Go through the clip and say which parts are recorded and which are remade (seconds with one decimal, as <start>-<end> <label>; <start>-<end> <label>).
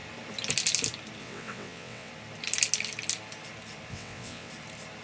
0.0-1.2 recorded; 1.2-2.1 remade; 2.1-3.9 recorded; 3.9-4.5 remade; 4.5-5.0 recorded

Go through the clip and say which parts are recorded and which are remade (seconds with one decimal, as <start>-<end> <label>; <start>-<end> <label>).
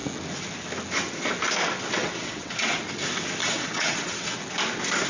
0.0-2.0 recorded; 2.0-2.8 remade; 2.8-3.4 recorded; 3.4-4.4 remade; 4.4-5.1 recorded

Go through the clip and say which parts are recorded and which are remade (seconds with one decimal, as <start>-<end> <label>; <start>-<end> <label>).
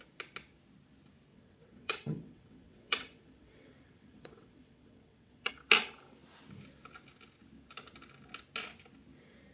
0.0-1.3 recorded; 1.3-5.5 remade; 5.5-9.5 recorded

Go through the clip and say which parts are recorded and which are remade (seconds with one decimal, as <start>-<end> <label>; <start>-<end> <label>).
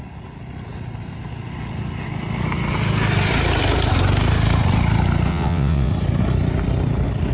0.0-5.3 recorded; 5.3-5.9 remade; 5.9-7.3 recorded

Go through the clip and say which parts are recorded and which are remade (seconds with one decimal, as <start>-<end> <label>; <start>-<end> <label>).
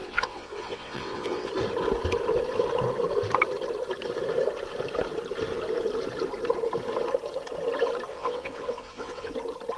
0.0-1.5 remade; 1.5-8.1 recorded; 8.1-9.3 remade; 9.3-9.8 recorded